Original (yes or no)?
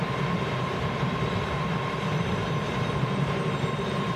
no